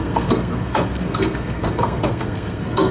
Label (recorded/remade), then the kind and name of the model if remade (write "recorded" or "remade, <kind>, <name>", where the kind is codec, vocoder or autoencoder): remade, codec, SNAC